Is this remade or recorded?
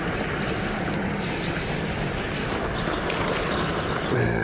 recorded